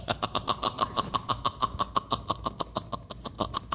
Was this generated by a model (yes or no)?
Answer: no